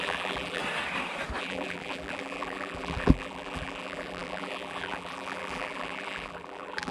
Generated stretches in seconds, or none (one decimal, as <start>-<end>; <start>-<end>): 0.0-0.6; 1.4-6.9